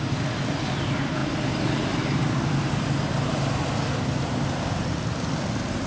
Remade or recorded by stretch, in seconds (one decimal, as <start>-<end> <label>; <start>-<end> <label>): 0.0-5.9 recorded